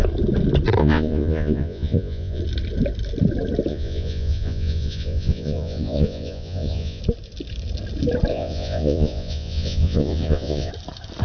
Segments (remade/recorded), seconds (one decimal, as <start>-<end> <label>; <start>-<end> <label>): 0.0-0.8 recorded; 0.8-2.4 remade; 2.4-3.7 recorded; 3.7-7.0 remade; 7.0-8.3 recorded; 8.3-10.7 remade; 10.7-11.2 recorded